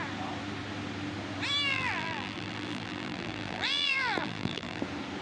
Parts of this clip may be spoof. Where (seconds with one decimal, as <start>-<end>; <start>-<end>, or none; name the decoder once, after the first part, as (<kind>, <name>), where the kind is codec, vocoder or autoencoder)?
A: 1.7-4.8 (vocoder, BigVGAN v2)